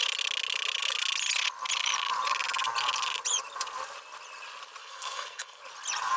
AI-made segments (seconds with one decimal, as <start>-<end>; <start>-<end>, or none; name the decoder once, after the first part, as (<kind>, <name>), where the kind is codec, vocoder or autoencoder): 4.8-5.6 (codec, SNAC)